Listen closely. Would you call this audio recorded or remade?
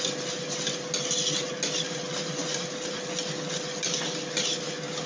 recorded